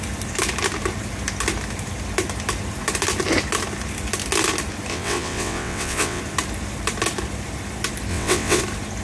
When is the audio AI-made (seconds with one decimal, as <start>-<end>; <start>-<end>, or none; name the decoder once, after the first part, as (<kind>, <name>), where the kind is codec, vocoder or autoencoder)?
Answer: 4.9-6.2 (vocoder, WaveNeXt); 8.1-8.6